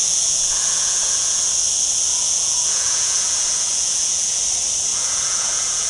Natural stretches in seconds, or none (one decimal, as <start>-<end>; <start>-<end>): 1.4-2.1; 4.4-4.9